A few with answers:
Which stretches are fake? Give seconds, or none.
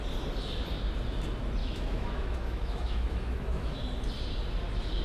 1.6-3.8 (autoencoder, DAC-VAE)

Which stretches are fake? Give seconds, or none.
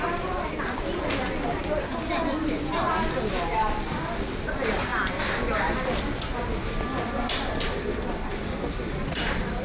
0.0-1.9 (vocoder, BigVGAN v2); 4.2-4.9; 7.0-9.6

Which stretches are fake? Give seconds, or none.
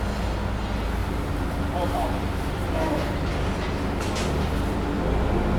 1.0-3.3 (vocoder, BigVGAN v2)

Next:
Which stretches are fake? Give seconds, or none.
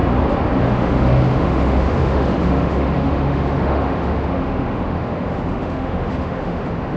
0.6-7.0 (autoencoder, DAC-VAE)